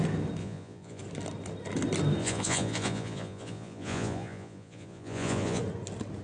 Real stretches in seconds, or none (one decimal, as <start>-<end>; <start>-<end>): 0.0-0.4; 1.0-2.2; 5.6-6.2